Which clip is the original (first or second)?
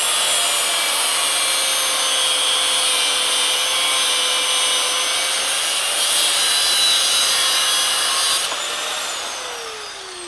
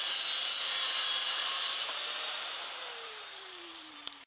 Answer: first